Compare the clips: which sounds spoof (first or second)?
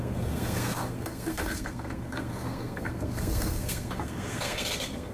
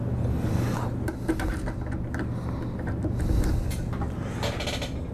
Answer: first